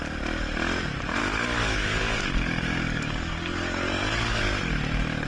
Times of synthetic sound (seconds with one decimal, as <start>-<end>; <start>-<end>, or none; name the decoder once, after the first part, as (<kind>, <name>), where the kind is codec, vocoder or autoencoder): 1.2-4.4 (codec, DAC)

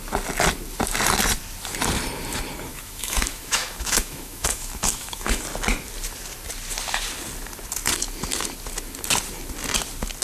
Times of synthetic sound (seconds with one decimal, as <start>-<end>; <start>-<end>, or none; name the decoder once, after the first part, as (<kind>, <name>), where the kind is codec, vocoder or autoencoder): 2.7-5.4 (autoencoder, DAC-VAE)

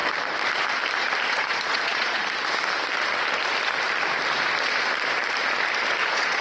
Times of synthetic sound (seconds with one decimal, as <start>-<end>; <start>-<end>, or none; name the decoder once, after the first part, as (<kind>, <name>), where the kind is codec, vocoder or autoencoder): 1.3-2.2 (vocoder, Vocos); 6.0-6.4

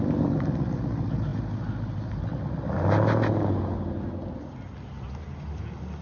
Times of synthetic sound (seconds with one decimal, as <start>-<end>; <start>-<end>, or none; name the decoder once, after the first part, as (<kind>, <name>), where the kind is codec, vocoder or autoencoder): none

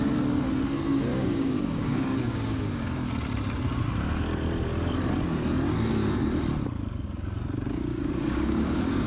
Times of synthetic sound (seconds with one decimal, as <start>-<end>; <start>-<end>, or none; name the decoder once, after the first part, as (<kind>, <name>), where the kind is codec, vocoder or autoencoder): 1.1-3.1 (codec, DAC); 7.9-9.1

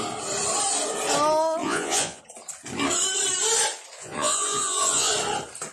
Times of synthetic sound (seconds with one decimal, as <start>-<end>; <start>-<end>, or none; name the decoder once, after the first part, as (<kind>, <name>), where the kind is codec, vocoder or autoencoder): 1.6-2.2 (vocoder, Vocos); 4.0-5.1